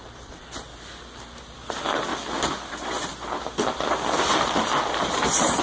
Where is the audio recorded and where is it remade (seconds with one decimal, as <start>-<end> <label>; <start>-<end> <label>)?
0.0-2.1 recorded; 2.1-5.6 remade